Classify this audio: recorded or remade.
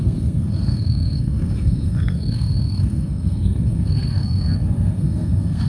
remade